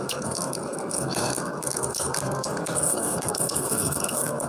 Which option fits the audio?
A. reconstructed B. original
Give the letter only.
A